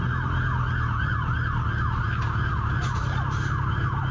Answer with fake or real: real